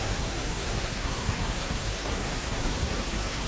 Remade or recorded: remade